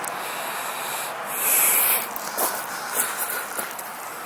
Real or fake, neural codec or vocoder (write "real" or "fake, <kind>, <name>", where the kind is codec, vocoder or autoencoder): real